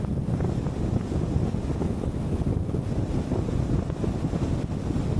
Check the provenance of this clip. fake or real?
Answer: real